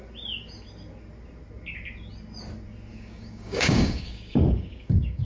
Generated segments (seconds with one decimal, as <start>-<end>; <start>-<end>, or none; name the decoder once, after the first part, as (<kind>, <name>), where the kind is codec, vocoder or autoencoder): 2.9-5.2 (codec, DAC)